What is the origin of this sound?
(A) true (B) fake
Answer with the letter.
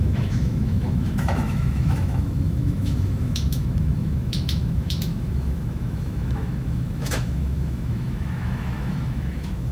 B